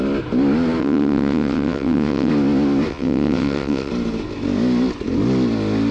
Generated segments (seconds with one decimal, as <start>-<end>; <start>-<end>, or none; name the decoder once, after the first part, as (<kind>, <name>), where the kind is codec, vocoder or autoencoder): 0.8-2.3 (vocoder, WaveNeXt); 2.9-3.9